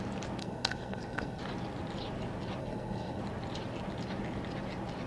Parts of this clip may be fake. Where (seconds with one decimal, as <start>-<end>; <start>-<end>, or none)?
0.4-1.4; 2.6-3.2